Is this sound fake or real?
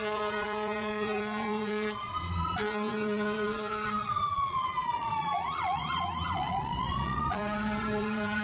fake